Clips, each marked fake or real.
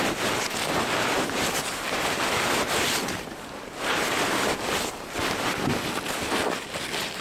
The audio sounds fake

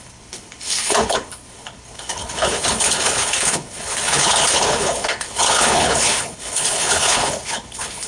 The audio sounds fake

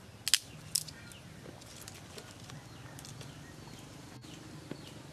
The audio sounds real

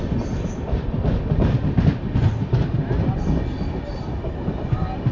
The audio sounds real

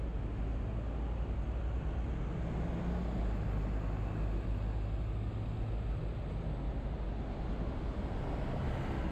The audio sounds real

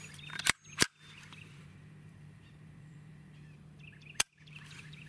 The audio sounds fake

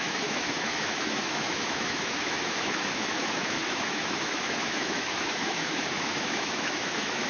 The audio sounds fake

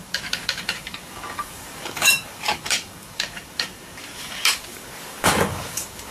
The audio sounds fake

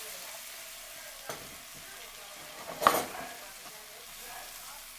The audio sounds real